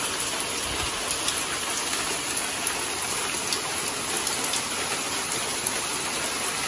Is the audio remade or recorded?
recorded